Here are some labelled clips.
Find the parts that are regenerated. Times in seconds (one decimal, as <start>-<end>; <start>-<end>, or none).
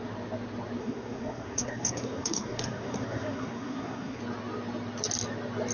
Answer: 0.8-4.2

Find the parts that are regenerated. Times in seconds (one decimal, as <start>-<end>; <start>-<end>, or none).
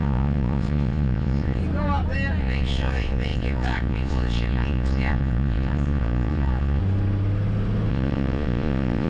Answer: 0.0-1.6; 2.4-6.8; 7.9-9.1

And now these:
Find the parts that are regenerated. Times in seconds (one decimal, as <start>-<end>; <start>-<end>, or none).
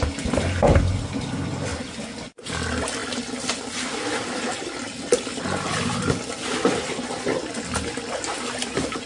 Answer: none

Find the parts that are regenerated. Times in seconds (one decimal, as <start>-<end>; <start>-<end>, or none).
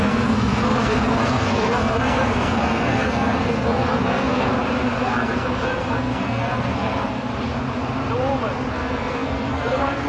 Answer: 0.0-4.5; 5.0-7.3; 8.7-10.1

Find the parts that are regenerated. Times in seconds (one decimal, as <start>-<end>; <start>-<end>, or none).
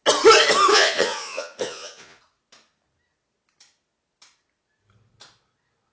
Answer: 0.7-2.2